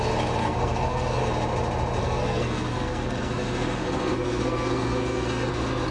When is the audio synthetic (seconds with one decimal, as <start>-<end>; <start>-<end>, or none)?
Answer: 0.4-1.2; 2.0-5.5